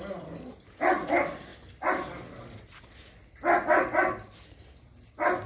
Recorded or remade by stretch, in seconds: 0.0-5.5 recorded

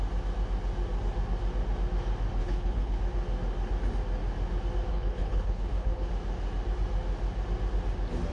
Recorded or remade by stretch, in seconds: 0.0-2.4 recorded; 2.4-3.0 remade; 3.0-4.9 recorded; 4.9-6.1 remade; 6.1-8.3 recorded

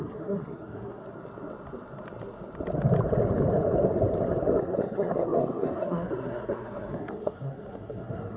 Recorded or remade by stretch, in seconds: 0.0-1.0 remade; 1.0-4.6 recorded; 4.6-8.4 remade